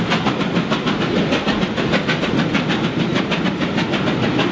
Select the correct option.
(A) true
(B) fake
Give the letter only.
A